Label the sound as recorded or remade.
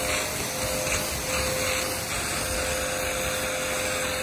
recorded